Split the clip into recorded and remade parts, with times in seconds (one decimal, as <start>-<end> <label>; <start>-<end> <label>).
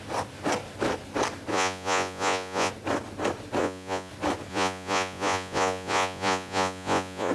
0.0-1.5 recorded; 1.5-2.7 remade; 2.7-3.6 recorded; 3.6-4.1 remade; 4.1-4.5 recorded; 4.5-7.3 remade